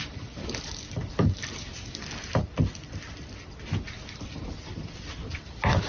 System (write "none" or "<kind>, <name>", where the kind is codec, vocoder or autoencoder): none